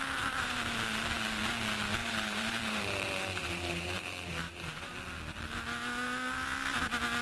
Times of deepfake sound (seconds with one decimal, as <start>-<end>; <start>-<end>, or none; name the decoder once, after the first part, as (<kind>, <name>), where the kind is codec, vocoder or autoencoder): 2.0-4.9 (vocoder, BigVGAN v2)